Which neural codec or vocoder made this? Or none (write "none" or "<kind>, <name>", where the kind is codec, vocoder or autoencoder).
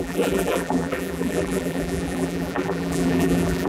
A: vocoder, BigVGAN v2